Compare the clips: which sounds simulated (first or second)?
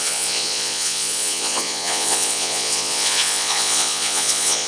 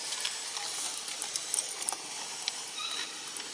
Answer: first